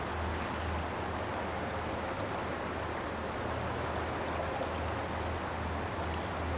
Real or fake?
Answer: real